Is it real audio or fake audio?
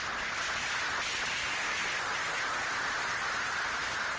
real